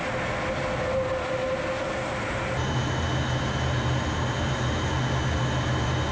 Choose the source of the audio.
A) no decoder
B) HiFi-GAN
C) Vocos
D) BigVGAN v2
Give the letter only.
A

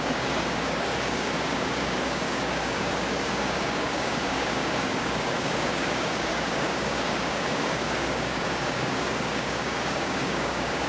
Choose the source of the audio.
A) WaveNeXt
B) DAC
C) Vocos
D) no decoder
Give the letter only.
B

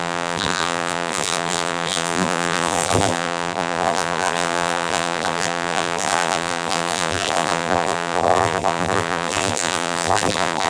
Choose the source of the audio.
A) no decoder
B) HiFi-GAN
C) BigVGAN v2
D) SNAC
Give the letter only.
C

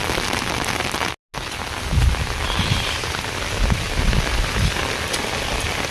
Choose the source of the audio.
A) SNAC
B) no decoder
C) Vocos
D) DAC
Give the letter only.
B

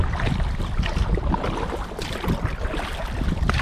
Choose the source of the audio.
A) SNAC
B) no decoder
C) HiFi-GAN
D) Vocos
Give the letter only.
B